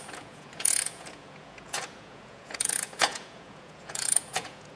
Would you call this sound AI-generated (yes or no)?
yes